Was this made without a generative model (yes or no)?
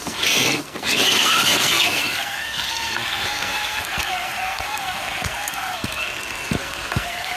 no